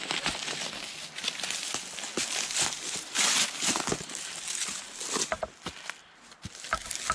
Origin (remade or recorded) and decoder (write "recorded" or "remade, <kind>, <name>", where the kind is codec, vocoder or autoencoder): recorded